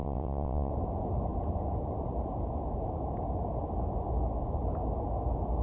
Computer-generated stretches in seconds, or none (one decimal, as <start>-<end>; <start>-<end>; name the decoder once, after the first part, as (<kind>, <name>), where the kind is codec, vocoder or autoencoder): 0.0-0.7 (vocoder, WaveNeXt)